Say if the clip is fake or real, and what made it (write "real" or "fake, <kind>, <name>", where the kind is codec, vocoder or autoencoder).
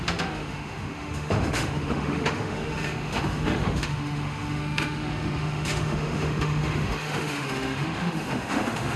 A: fake, autoencoder, DAC-VAE